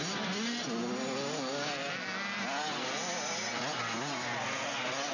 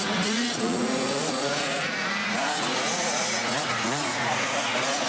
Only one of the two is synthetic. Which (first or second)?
second